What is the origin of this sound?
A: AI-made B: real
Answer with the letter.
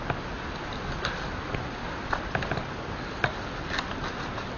B